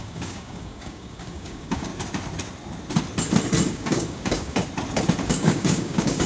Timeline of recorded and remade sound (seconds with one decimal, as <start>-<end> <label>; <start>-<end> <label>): 0.0-1.9 remade; 1.9-3.7 recorded; 3.7-4.6 remade; 4.6-5.2 recorded; 5.2-6.3 remade